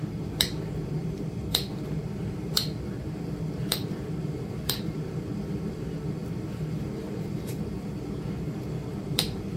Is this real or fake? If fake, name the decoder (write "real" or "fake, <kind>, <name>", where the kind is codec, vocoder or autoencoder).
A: fake, vocoder, BigVGAN v2